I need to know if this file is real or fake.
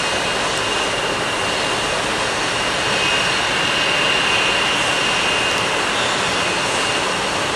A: real